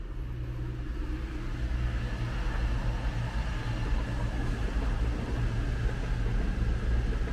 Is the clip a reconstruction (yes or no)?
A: no